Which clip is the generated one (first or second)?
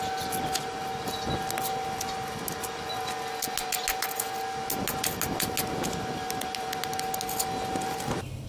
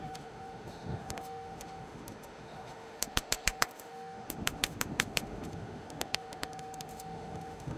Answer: second